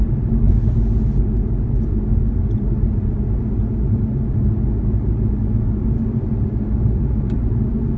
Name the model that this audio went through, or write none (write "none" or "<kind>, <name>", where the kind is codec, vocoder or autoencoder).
none